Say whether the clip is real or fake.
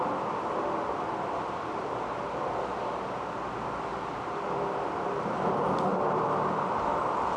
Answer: fake